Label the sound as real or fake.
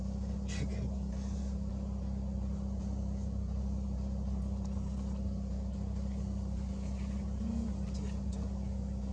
real